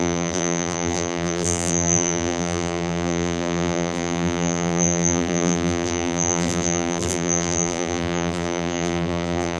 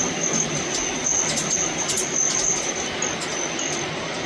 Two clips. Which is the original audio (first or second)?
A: second